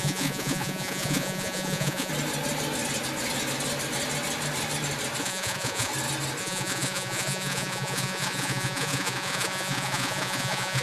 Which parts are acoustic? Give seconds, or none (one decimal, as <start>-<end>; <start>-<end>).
2.1-5.2; 5.9-6.4